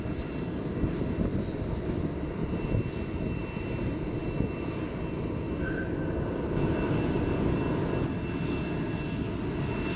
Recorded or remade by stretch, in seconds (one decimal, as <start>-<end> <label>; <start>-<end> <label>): 0.0-10.0 recorded